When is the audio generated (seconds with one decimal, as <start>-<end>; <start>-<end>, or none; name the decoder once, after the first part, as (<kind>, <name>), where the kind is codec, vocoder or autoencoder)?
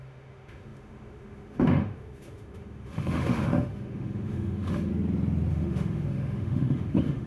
0.0-4.9 (autoencoder, DAC-VAE); 5.5-7.3